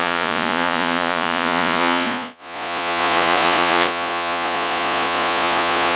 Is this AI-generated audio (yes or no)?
yes